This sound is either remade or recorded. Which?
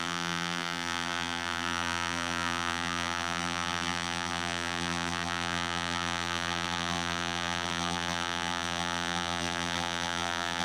remade